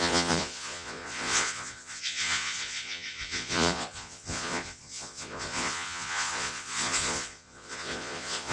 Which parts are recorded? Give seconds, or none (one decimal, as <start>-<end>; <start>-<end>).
none